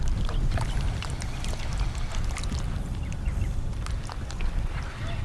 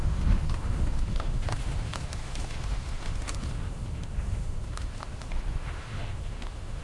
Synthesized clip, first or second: second